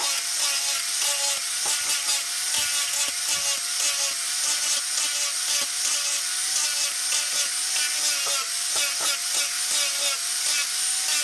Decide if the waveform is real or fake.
real